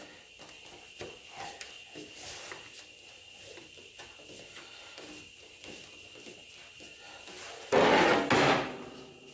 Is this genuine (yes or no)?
yes